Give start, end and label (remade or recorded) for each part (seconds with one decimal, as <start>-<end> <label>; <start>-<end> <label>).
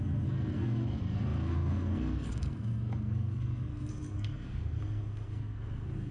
0.0-6.1 remade